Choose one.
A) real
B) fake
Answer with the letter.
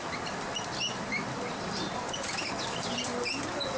A